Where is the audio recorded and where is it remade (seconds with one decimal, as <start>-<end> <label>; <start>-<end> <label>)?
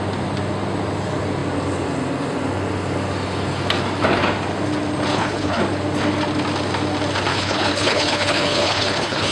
0.0-5.1 recorded; 5.1-5.6 remade; 5.6-7.3 recorded; 7.3-9.3 remade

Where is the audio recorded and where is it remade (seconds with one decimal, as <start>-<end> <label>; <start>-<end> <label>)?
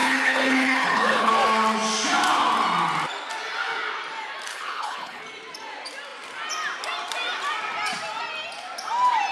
0.0-1.3 remade; 1.3-4.5 recorded; 4.5-5.2 remade; 5.2-9.3 recorded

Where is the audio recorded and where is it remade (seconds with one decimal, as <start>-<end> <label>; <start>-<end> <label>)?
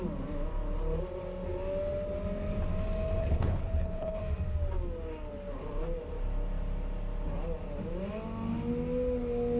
0.0-3.2 recorded; 3.2-4.2 remade; 4.2-9.6 recorded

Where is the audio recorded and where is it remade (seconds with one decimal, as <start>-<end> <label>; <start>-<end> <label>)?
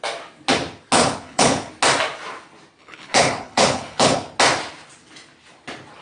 0.0-1.0 recorded; 1.0-1.7 remade; 1.7-2.8 recorded; 2.8-4.2 remade; 4.2-6.0 recorded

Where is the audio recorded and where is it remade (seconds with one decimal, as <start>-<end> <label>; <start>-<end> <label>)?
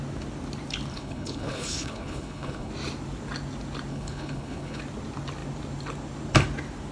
0.0-0.9 recorded; 0.9-2.7 remade; 2.7-3.9 recorded; 3.9-4.8 remade; 4.8-6.9 recorded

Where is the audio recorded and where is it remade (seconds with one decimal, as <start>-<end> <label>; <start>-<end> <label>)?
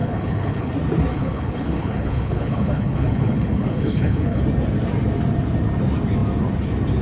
0.0-0.7 remade; 0.7-1.1 recorded; 1.1-4.4 remade; 4.4-7.0 recorded